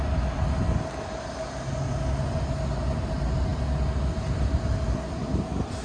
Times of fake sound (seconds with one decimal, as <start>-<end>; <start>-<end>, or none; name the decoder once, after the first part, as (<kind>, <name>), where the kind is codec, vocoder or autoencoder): none

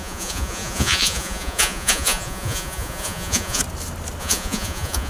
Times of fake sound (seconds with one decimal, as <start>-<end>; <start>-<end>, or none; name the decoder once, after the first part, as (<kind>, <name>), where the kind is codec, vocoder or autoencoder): 0.0-3.6 (vocoder, Vocos); 4.2-5.1

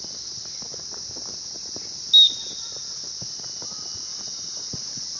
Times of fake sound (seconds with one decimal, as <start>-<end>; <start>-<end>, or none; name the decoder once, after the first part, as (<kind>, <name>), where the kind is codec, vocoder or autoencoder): 4.1-4.7 (vocoder, Vocos)